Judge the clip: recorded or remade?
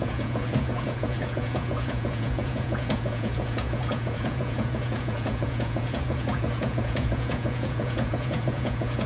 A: remade